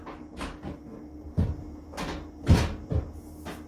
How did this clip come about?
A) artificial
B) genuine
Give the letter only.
B